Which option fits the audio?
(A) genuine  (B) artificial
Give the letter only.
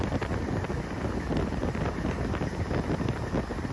A